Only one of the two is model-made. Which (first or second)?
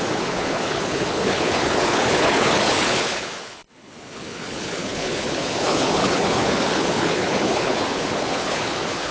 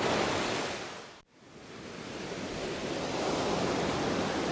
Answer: first